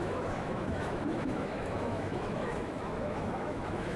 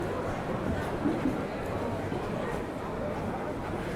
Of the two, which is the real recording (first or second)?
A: second